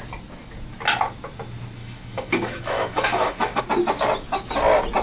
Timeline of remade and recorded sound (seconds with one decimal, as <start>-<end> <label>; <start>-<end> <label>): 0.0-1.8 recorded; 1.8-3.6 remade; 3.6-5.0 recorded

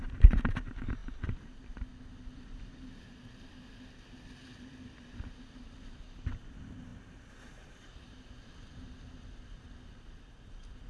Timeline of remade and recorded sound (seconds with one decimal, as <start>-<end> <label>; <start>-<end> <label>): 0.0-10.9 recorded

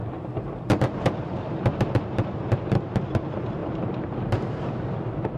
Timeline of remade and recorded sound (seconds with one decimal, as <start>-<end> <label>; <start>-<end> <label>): 0.0-2.9 remade; 2.9-3.6 recorded; 3.6-4.6 remade; 4.6-5.4 recorded

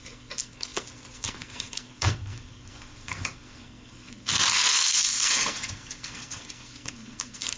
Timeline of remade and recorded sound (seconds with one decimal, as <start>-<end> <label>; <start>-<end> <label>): 0.0-7.6 remade

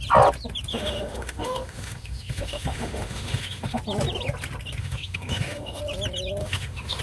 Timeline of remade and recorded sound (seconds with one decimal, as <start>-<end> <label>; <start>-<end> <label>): 0.0-0.7 recorded; 0.7-3.8 remade; 3.8-4.8 recorded; 4.8-5.8 remade; 5.8-6.4 recorded; 6.4-7.0 remade

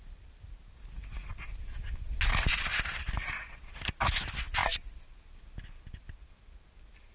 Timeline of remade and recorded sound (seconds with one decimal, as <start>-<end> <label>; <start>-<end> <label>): 0.0-7.1 recorded

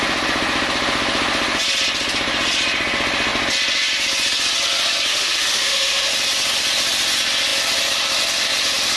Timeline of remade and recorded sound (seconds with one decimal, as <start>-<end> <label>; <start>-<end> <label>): 0.0-5.1 recorded; 5.1-6.1 remade; 6.1-9.0 recorded